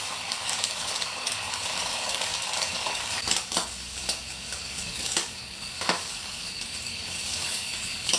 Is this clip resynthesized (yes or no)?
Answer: yes